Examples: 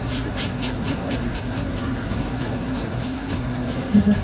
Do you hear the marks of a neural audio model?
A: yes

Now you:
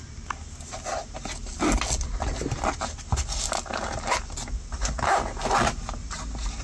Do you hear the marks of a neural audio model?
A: no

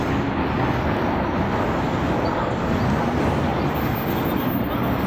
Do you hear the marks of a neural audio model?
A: no